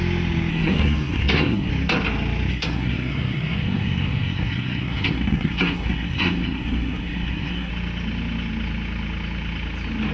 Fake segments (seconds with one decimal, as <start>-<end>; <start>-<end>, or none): 0.5-1.7; 2.5-7.7